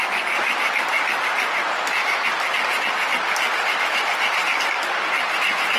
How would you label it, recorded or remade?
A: recorded